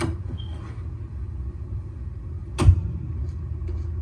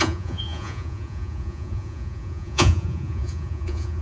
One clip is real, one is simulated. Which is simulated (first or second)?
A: second